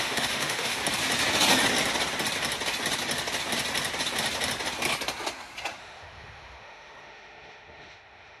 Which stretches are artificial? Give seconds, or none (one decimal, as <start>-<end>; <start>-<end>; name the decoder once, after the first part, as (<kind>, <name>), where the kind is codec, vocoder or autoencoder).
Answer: 0.0-0.8 (autoencoder, DAC-VAE); 5.8-8.4